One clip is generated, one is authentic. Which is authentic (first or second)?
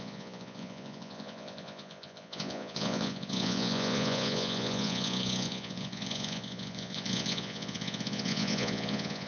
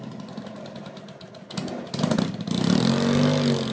second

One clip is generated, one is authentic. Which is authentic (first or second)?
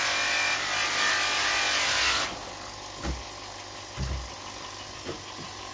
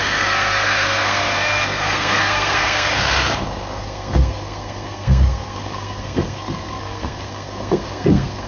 first